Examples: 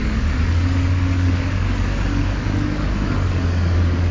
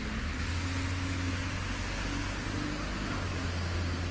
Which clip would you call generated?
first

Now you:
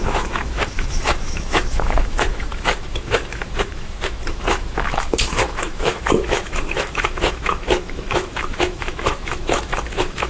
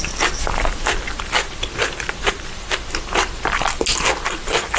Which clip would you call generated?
first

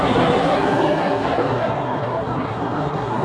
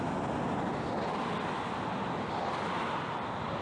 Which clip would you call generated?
first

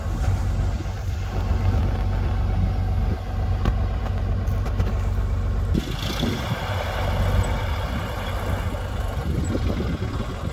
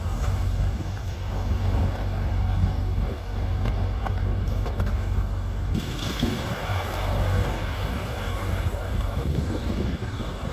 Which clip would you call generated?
second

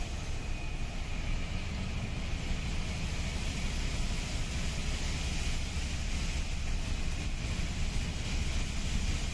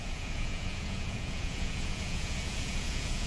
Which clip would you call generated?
second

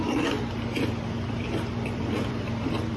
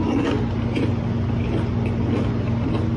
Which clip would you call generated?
first